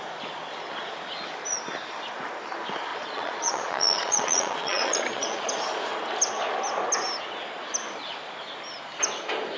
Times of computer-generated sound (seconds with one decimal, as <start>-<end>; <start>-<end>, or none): 2.9-5.5